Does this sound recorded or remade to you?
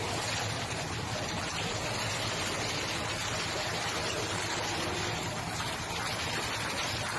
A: recorded